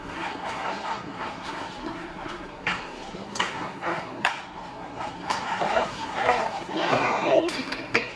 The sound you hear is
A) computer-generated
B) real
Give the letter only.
A